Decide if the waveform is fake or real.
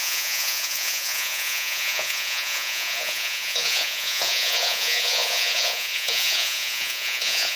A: fake